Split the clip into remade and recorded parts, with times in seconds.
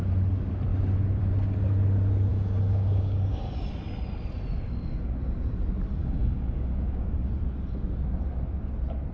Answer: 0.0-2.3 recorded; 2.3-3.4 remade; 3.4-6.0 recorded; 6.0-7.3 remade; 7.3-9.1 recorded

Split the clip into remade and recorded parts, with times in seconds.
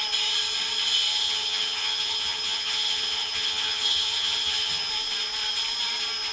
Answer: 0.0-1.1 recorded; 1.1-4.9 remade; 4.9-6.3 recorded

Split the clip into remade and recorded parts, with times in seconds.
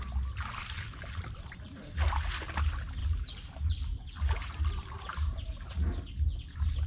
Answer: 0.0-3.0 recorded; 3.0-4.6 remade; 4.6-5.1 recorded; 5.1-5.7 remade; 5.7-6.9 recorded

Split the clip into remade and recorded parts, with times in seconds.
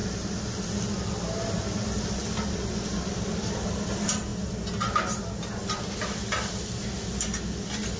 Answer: 0.0-8.0 recorded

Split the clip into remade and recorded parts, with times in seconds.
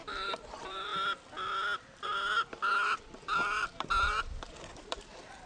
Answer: 0.0-0.9 remade; 0.9-4.2 recorded; 4.2-5.5 remade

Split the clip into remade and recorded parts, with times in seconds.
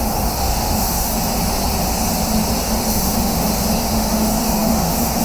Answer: 0.0-1.1 remade; 1.1-2.6 recorded; 2.6-5.2 remade